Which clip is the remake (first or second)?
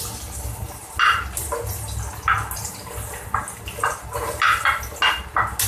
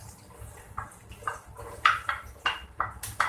second